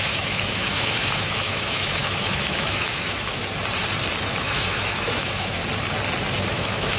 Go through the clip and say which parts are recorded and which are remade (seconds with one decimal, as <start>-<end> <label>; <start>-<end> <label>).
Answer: 0.0-3.4 remade; 3.4-4.3 recorded; 4.3-5.6 remade; 5.6-6.5 recorded; 6.5-7.0 remade